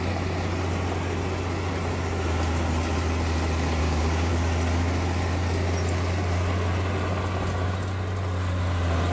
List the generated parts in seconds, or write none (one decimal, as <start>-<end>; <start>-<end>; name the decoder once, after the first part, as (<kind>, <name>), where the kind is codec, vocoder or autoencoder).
3.8-4.3 (codec, DAC)